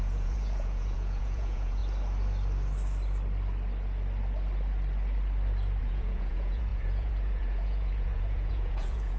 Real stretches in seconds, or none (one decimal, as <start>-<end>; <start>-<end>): 1.8-5.8